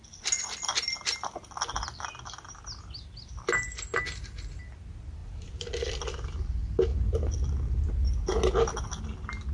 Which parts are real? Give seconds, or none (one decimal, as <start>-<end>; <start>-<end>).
0.0-5.2; 6.1-6.9; 7.9-9.5